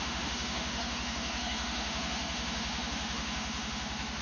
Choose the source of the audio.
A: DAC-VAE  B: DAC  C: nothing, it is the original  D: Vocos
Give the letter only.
A